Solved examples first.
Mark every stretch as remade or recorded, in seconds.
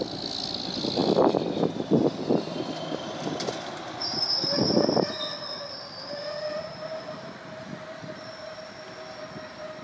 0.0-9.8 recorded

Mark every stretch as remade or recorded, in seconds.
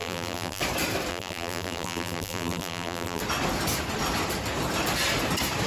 0.0-0.6 remade; 0.6-1.1 recorded; 1.1-3.2 remade; 3.2-5.7 recorded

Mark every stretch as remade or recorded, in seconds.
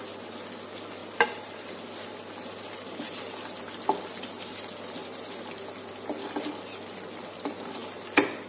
0.0-1.0 recorded; 1.0-1.8 remade; 1.8-8.5 recorded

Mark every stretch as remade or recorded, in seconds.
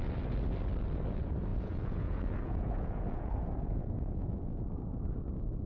0.0-1.5 recorded; 1.5-4.6 remade; 4.6-5.7 recorded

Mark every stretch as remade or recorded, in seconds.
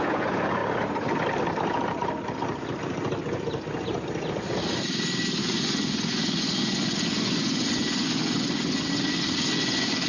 0.0-0.6 remade; 0.6-5.4 recorded; 5.4-10.1 remade